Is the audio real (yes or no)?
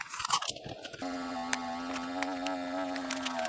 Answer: yes